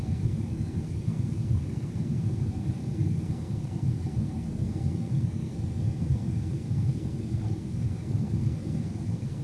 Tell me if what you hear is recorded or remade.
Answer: remade